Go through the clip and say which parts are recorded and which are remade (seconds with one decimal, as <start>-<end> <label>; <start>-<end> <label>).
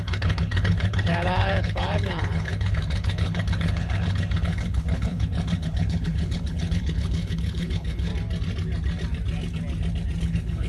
0.0-8.1 remade; 8.1-10.2 recorded; 10.2-10.7 remade